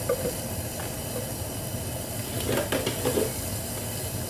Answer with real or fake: real